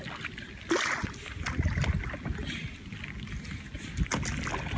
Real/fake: real